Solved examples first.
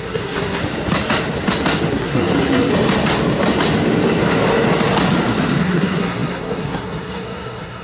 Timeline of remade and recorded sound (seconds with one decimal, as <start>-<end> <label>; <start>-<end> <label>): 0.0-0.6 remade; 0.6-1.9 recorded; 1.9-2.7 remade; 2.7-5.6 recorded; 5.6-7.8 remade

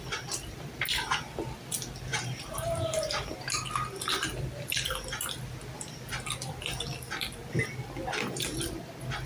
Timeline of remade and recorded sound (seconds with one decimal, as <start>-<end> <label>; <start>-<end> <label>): 0.0-2.1 recorded; 2.1-3.5 remade; 3.5-9.3 recorded

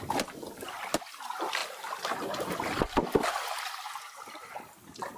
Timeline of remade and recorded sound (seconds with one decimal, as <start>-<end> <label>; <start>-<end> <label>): 0.0-5.2 remade